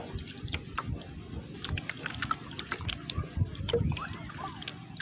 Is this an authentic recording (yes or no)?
yes